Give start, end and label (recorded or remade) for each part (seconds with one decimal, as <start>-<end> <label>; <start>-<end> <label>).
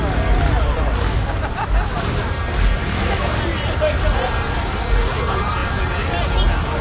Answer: 0.0-2.8 recorded; 2.8-3.3 remade; 3.3-6.8 recorded